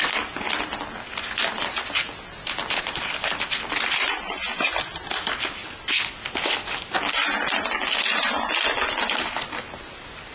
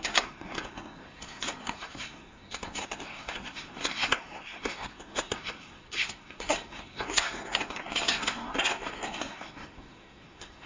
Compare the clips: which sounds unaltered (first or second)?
first